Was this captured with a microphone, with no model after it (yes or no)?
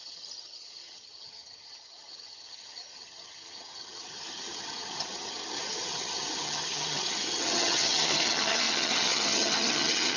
no